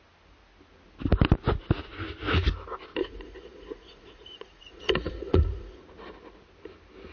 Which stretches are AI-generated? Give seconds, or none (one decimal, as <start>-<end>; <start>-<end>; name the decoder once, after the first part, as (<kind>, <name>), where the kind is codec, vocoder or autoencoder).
3.0-5.8 (vocoder, Vocos)